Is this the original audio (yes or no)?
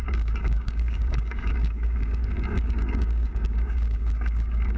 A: no